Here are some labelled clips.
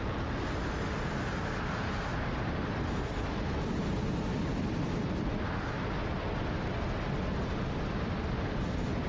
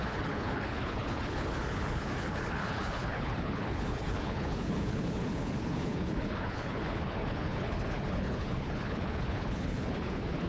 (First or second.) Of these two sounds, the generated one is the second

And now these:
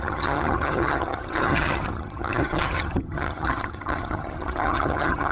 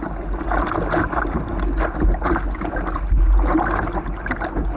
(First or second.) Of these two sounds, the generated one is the first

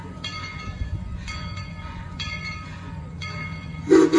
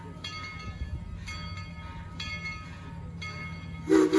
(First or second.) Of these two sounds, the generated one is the first